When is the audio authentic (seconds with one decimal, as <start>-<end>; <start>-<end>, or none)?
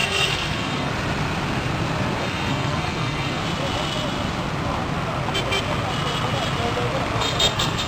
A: 0.9-2.2; 3.4-7.5